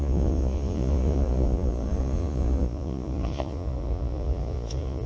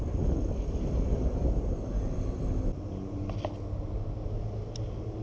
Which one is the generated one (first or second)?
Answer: first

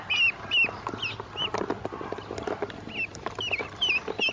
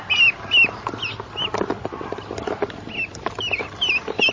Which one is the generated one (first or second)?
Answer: second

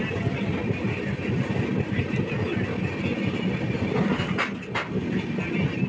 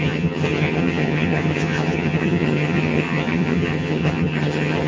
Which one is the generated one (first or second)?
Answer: second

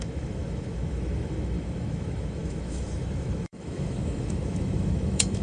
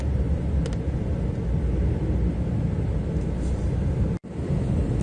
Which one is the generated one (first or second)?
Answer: first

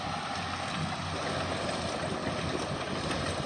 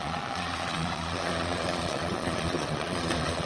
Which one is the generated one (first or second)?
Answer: second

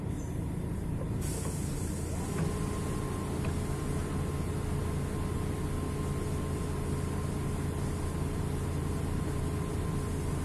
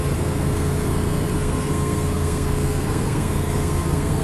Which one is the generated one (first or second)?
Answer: second